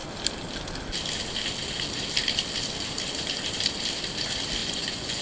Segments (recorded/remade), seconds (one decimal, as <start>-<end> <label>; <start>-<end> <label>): 0.0-4.6 recorded; 4.6-5.2 remade